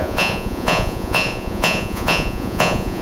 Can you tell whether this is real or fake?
fake